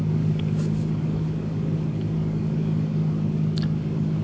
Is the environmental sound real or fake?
fake